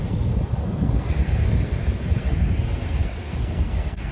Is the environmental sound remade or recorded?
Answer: remade